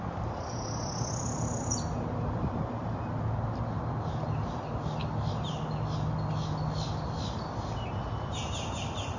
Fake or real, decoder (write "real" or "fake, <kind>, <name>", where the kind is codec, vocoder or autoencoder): real